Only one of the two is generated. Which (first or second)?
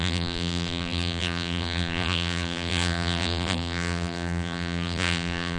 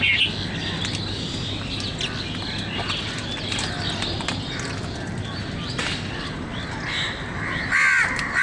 first